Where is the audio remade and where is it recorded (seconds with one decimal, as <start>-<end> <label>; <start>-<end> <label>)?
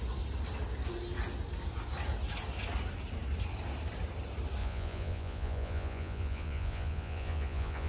0.0-4.6 recorded; 4.6-7.9 remade